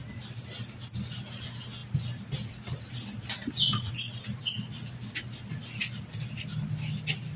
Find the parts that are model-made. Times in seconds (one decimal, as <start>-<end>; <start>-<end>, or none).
none